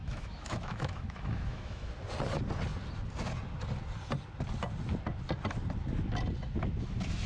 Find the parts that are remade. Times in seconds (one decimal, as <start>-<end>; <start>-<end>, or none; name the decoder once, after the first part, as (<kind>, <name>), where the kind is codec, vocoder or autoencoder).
0.0-1.9 (autoencoder, DAC-VAE)